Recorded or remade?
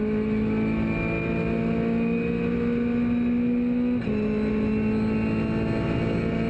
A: recorded